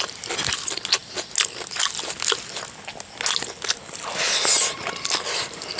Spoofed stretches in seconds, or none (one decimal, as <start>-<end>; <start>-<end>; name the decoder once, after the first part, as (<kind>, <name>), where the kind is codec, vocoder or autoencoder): none